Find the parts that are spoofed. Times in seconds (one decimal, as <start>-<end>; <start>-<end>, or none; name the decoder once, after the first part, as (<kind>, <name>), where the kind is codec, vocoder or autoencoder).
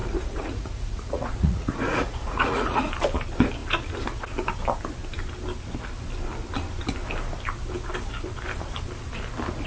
0.0-2.9 (vocoder, Vocos)